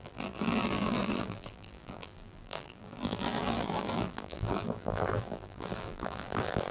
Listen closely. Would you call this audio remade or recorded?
remade